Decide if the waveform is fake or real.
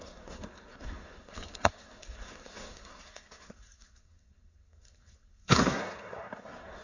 fake